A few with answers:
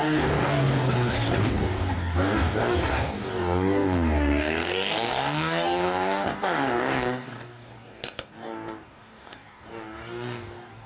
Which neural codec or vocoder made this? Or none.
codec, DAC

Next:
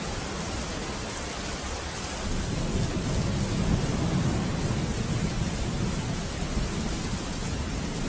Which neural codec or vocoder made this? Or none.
none